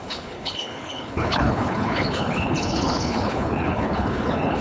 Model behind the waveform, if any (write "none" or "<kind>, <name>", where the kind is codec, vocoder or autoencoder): codec, HILCodec